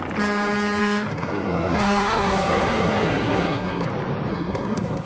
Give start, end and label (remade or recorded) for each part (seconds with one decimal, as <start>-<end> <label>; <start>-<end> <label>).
0.0-0.8 recorded; 0.8-3.9 remade; 3.9-4.3 recorded; 4.3-5.1 remade

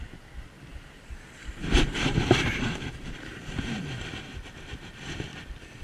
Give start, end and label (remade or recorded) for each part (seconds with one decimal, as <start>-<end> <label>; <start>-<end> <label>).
0.0-5.3 remade; 5.3-5.8 recorded

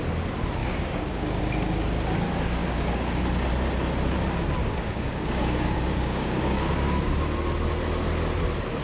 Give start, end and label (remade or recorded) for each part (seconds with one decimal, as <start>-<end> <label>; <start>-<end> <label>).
0.0-0.6 recorded; 0.6-1.4 remade; 1.4-2.6 recorded; 2.6-3.2 remade; 3.2-4.6 recorded; 4.6-6.7 remade; 6.7-8.8 recorded